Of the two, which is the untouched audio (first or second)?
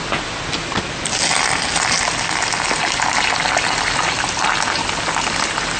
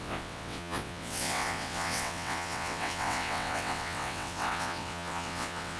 first